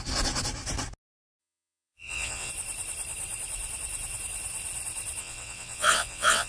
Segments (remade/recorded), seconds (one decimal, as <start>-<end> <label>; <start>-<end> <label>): 0.0-1.4 recorded; 1.4-2.5 remade; 2.5-5.2 recorded; 5.2-6.5 remade